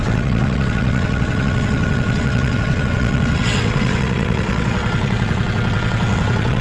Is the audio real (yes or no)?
no